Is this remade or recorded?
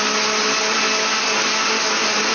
recorded